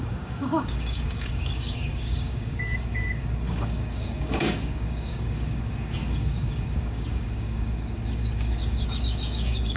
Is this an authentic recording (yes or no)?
no